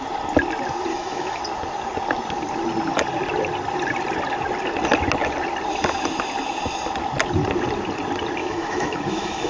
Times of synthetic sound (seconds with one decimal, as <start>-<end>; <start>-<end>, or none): 0.9-1.4; 8.4-9.5

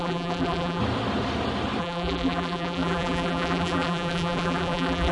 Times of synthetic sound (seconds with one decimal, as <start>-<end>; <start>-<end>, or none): 0.0-0.8; 1.8-5.1